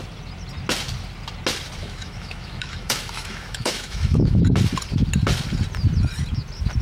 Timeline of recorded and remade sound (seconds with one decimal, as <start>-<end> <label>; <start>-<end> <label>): 0.0-1.8 recorded; 1.8-4.4 remade; 4.4-6.8 recorded